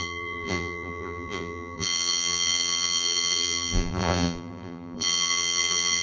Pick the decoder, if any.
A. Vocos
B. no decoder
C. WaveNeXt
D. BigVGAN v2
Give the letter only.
D